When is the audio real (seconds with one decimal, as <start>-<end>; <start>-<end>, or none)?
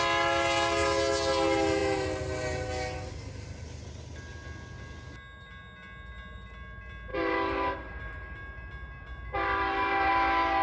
0.0-7.1; 10.1-10.6